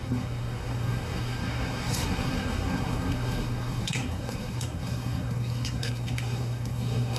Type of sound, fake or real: fake